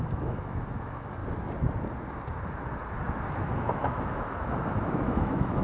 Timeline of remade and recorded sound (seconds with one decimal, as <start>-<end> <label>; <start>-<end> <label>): 0.0-1.2 remade; 1.2-3.4 recorded; 3.4-5.6 remade